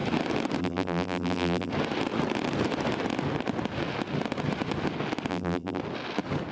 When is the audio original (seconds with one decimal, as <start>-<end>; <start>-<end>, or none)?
0.0-0.6; 1.7-5.3; 5.8-6.5